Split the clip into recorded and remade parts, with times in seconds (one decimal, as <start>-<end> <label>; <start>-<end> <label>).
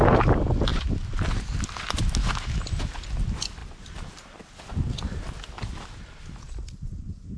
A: 0.0-0.7 recorded; 0.7-1.4 remade; 1.4-7.4 recorded